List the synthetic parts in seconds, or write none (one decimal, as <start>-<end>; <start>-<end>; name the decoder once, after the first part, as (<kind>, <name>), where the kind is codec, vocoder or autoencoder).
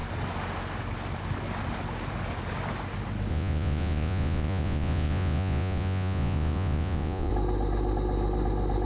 3.3-7.3 (vocoder, Vocos)